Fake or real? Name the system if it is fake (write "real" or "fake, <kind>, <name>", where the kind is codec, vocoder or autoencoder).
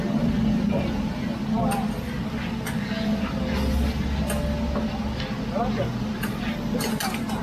real